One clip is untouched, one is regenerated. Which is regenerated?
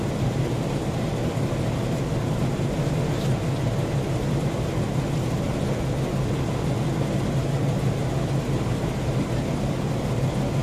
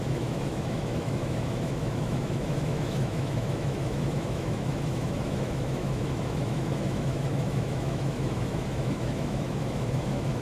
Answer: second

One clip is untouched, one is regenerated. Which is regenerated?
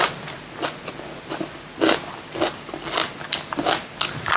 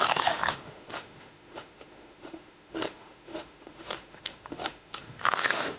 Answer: second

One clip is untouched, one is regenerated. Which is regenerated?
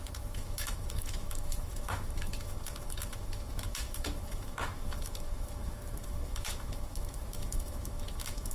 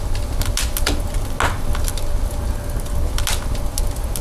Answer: first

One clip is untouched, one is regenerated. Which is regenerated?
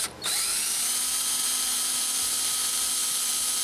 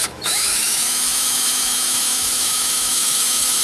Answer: second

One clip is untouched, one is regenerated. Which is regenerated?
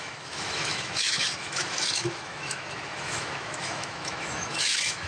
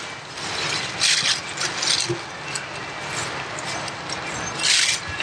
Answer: first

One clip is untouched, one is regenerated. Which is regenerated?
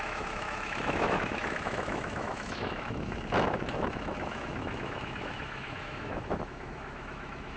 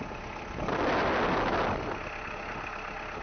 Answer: first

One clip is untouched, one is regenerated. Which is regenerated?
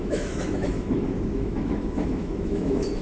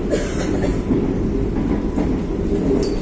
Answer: first